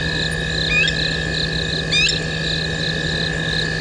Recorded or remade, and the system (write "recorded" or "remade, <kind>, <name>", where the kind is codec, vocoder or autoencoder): recorded